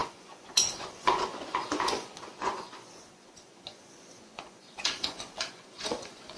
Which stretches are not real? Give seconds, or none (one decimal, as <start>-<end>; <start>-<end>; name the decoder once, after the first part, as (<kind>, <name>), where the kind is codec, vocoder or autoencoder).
0.0-6.4 (vocoder, Vocos)